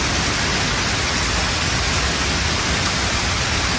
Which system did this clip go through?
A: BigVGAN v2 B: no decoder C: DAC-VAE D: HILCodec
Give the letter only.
B